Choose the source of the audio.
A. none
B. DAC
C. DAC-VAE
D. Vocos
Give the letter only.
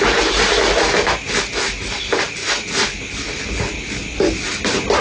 A